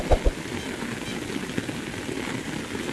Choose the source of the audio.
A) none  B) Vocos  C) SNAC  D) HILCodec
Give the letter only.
A